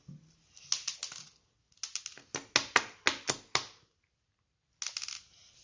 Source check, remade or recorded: recorded